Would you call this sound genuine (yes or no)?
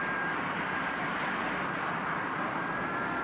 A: yes